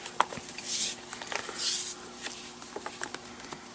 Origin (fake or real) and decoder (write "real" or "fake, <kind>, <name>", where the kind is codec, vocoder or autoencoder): real